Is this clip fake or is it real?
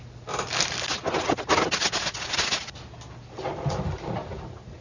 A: real